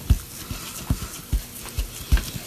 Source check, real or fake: real